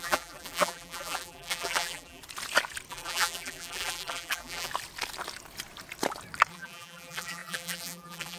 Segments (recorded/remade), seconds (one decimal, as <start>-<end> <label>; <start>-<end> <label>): 0.0-2.2 remade; 2.2-2.9 recorded; 2.9-4.7 remade; 4.7-6.5 recorded; 6.5-8.4 remade